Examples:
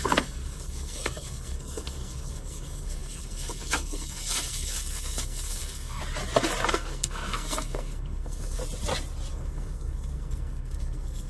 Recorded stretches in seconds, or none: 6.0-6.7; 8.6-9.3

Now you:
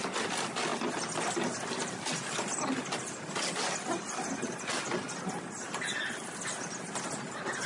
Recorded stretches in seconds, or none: 0.0-7.7

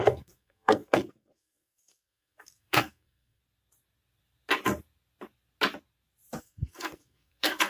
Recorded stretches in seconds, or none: 3.4-6.4

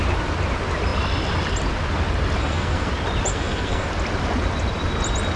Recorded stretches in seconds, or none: 0.0-2.4; 2.9-3.3; 3.9-5.4

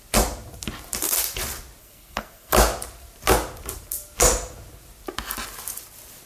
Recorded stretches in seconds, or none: 0.0-1.8; 2.5-6.3

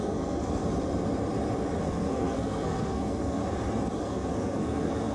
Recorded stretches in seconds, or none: 0.6-1.8; 3.4-4.0